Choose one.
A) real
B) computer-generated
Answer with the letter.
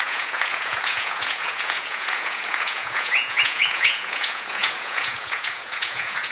B